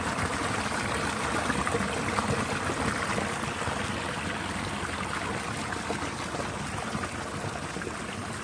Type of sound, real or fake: real